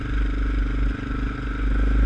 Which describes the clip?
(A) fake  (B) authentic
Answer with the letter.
B